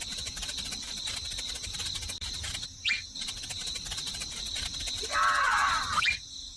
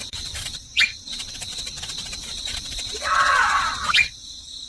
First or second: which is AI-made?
second